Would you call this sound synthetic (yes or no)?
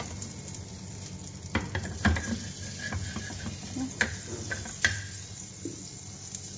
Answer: no